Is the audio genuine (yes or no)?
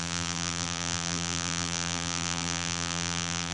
no